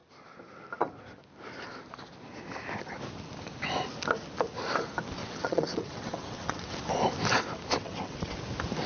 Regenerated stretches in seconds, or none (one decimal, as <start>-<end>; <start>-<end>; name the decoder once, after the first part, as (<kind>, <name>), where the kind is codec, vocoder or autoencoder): 5.2-6.8 (vocoder, WaveNeXt); 7.8-8.4